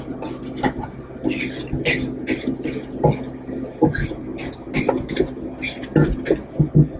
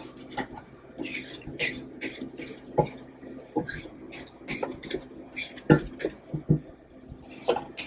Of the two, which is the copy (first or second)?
second